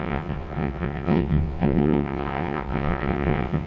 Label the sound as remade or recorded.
remade